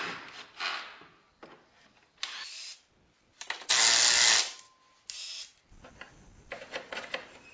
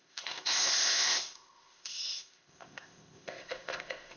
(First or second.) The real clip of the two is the first